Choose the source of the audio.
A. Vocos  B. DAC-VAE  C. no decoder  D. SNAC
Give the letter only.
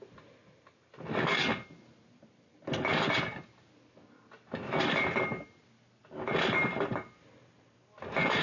C